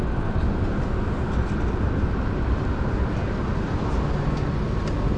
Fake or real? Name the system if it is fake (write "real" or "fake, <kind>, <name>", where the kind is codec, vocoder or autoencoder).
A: real